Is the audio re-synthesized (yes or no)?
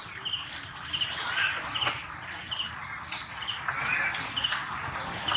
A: no